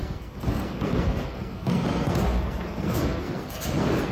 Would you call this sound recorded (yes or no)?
no